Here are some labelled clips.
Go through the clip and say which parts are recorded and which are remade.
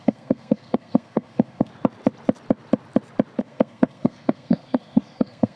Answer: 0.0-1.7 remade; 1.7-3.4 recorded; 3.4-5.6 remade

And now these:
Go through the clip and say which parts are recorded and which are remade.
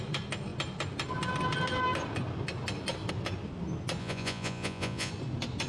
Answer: 0.0-4.0 recorded; 4.0-5.1 remade; 5.1-5.7 recorded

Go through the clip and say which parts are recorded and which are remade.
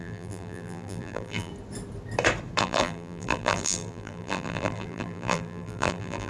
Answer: 0.0-1.5 remade; 1.5-2.6 recorded; 2.6-6.3 remade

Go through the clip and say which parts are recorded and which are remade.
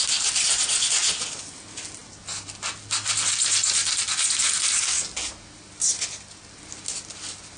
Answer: 0.0-7.6 recorded